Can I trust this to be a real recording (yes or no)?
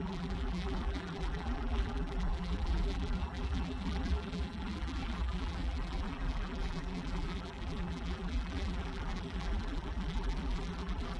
no